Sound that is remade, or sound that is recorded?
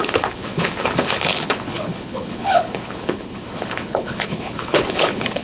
remade